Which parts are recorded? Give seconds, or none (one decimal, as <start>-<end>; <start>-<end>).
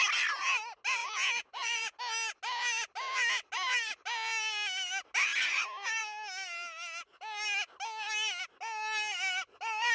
0.0-1.0; 2.0-9.9